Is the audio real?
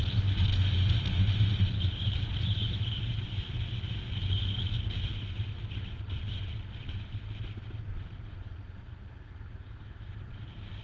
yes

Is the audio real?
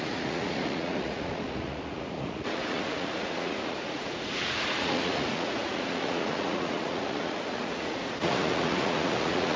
no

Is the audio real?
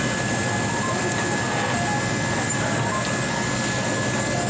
yes